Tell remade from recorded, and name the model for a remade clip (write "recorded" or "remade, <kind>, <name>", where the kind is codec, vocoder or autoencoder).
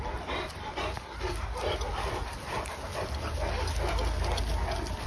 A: recorded